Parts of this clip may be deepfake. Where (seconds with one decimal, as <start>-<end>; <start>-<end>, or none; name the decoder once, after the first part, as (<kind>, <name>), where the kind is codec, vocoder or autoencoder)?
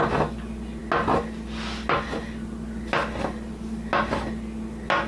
none